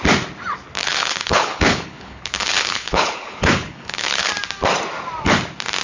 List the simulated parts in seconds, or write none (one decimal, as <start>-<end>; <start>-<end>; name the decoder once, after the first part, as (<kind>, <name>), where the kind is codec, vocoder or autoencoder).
0.8-4.3 (codec, HILCodec)